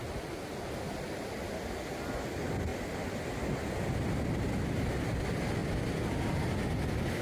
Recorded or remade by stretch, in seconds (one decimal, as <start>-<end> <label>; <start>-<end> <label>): 0.0-7.2 recorded